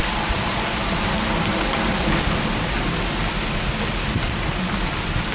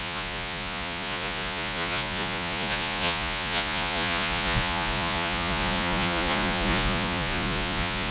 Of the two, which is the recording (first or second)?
first